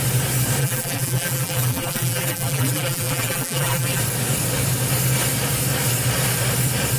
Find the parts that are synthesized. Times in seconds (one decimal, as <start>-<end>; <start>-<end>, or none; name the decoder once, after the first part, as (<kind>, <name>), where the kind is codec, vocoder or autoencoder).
0.6-4.0 (vocoder, BigVGAN v2)